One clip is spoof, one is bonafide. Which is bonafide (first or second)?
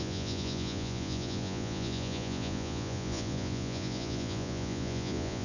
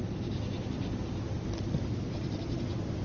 second